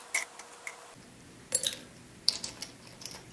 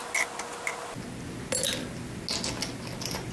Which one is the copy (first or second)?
first